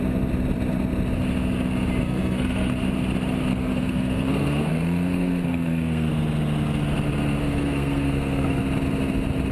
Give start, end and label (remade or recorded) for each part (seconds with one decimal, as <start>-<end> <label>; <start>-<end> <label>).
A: 0.0-2.0 recorded; 2.0-2.7 remade; 2.7-3.5 recorded; 3.5-6.1 remade; 6.1-7.4 recorded; 7.4-8.6 remade; 8.6-9.5 recorded

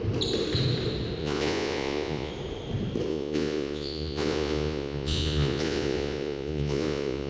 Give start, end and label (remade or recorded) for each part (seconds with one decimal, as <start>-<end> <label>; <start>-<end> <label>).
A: 0.0-1.2 recorded; 1.2-2.3 remade; 2.3-3.1 recorded; 3.1-7.3 remade

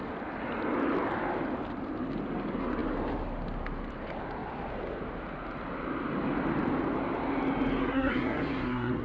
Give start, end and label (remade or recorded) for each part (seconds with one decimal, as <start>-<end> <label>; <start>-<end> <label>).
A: 0.0-7.8 recorded; 7.8-9.0 remade

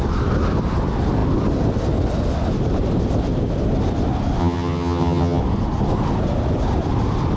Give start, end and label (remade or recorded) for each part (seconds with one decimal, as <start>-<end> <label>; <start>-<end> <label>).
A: 0.0-4.4 recorded; 4.4-5.4 remade; 5.4-7.4 recorded

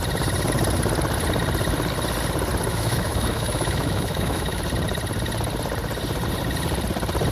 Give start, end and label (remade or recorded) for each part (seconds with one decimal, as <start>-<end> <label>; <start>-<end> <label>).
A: 0.0-2.7 recorded; 2.7-4.6 remade; 4.6-7.3 recorded

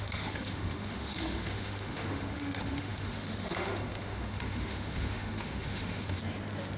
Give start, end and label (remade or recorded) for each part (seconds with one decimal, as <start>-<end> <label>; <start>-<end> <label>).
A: 0.0-6.2 remade; 6.2-6.8 recorded

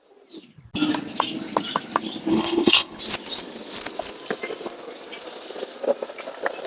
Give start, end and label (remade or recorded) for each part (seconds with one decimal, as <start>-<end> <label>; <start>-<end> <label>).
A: 0.0-2.3 recorded; 2.3-3.0 remade; 3.0-6.7 recorded

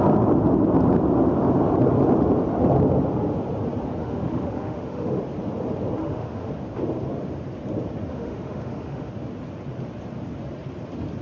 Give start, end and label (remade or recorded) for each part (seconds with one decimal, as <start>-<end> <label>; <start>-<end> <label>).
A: 0.0-4.0 recorded; 4.0-5.2 remade; 5.2-6.0 recorded; 6.0-6.5 remade; 6.5-8.1 recorded; 8.1-9.1 remade; 9.1-11.2 recorded